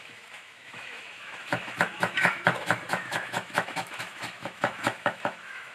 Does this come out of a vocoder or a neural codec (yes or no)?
yes